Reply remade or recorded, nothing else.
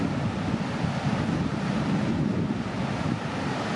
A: recorded